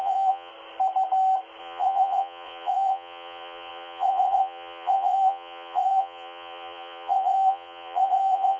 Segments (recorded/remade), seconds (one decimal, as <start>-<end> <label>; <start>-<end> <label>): 0.0-0.5 remade; 0.5-1.6 recorded; 1.6-8.6 remade